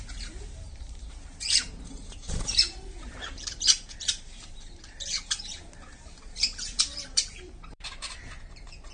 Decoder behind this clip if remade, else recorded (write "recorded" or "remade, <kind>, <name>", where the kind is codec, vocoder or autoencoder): remade, vocoder, BigVGAN v2